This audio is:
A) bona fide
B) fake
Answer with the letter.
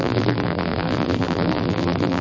B